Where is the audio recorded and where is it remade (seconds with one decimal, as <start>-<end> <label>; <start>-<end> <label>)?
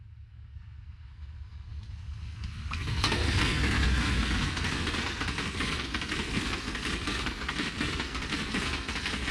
0.0-9.3 remade